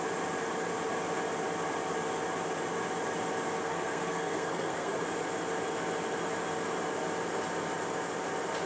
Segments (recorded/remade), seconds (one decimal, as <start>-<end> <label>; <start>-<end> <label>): 0.0-3.6 recorded; 3.6-5.0 remade; 5.0-8.7 recorded